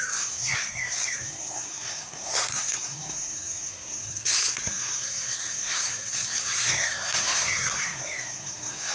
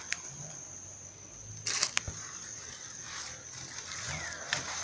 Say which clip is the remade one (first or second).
first